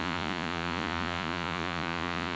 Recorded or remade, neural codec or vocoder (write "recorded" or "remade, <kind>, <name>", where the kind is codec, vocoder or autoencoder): remade, vocoder, Vocos